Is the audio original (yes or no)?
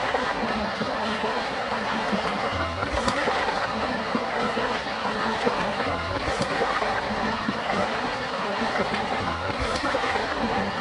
no